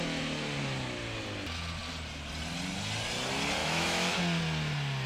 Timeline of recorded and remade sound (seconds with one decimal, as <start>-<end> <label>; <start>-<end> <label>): 0.0-3.6 recorded; 3.6-4.1 remade; 4.1-5.1 recorded